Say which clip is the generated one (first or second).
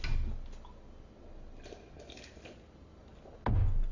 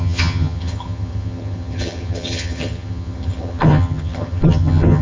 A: second